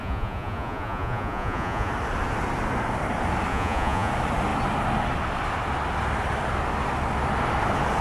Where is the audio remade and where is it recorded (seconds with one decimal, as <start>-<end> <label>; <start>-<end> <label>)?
0.0-1.9 remade; 1.9-3.5 recorded; 3.5-4.1 remade; 4.1-8.0 recorded

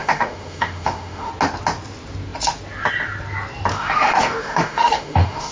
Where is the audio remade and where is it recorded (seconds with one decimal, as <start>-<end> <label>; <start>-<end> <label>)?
0.0-1.3 remade; 1.3-3.7 recorded; 3.7-5.5 remade

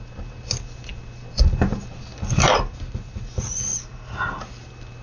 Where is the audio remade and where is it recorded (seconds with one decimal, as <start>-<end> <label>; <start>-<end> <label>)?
0.0-5.0 recorded

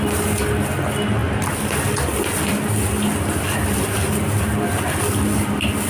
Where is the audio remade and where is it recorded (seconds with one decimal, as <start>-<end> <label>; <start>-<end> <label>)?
0.0-5.9 recorded